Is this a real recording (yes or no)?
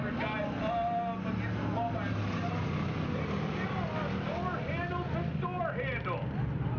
yes